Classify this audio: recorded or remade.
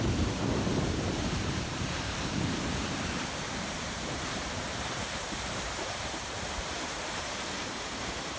remade